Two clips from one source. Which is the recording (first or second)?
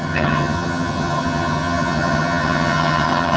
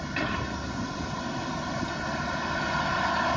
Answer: second